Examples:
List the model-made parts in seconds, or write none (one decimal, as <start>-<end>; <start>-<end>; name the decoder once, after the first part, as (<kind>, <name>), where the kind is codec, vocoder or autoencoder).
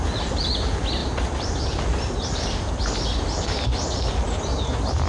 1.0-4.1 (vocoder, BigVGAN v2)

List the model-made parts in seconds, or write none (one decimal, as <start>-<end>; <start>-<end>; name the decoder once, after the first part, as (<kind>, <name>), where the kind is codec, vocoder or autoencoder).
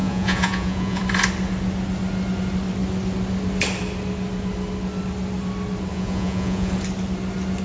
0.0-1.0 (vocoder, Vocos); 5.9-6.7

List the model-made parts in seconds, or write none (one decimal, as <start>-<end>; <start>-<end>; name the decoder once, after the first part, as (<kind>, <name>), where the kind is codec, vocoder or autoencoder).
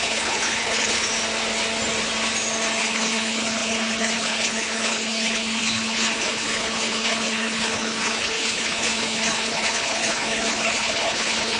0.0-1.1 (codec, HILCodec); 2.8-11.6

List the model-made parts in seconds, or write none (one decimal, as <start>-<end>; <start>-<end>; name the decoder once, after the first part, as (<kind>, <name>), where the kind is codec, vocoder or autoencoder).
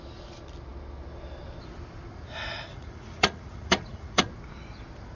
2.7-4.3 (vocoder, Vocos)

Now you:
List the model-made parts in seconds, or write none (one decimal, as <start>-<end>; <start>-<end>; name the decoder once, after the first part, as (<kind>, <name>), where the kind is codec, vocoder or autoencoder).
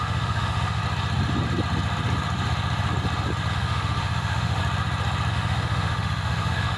0.0-0.8 (autoencoder, DAC-VAE); 3.5-4.6; 5.3-6.8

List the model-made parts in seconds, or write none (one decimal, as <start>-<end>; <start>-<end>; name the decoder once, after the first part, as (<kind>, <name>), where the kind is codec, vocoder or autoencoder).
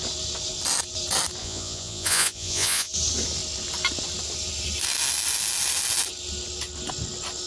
1.4-2.9 (vocoder, Vocos)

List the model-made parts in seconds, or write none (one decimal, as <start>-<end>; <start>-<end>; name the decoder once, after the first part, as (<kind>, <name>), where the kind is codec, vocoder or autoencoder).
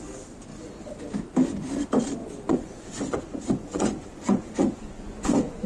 2.2-5.7 (vocoder, Vocos)